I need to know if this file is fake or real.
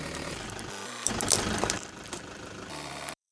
fake